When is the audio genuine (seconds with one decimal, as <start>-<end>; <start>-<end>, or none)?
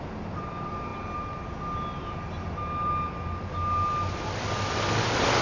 0.0-5.4